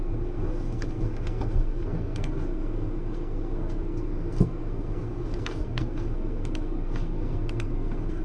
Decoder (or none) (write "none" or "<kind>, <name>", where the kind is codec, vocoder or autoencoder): codec, SNAC